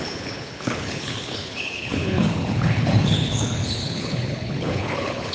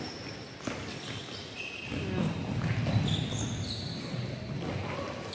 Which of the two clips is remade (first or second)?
first